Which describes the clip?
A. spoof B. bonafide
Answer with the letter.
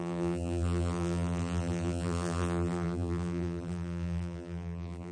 A